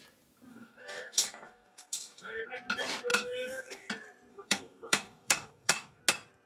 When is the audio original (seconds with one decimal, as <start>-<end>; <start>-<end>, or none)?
0.0-0.5; 2.4-3.1; 3.9-4.3; 6.0-6.5